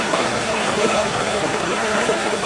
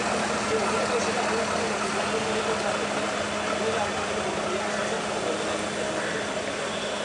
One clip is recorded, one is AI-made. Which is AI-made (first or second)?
first